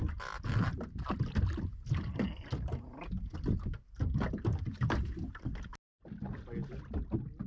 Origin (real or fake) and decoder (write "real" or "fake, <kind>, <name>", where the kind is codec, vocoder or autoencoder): real